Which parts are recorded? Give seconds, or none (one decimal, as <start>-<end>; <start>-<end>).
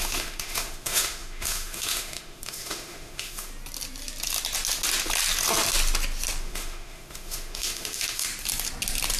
3.5-6.4; 8.3-9.2